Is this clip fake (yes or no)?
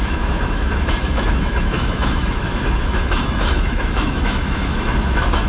yes